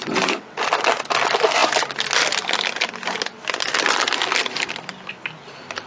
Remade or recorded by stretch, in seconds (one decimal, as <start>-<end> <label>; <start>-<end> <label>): 0.0-0.6 remade; 0.6-5.9 recorded